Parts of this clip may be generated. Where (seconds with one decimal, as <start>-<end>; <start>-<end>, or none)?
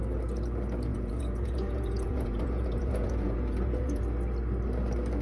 0.9-4.0